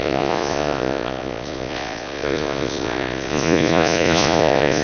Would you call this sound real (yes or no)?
no